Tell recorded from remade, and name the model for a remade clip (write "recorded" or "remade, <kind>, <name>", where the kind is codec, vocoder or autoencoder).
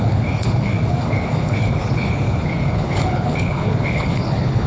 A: remade, codec, HILCodec